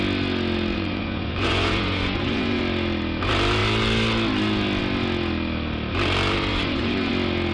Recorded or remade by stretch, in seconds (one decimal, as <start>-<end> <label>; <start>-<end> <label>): 0.0-0.7 recorded; 0.7-2.6 remade; 2.6-6.5 recorded; 6.5-7.1 remade; 7.1-7.5 recorded